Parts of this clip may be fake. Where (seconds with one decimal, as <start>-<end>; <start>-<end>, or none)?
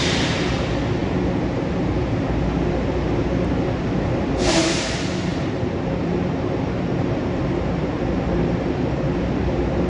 0.0-9.9